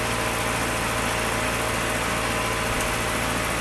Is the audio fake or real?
real